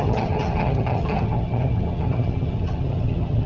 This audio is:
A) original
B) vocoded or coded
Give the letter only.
B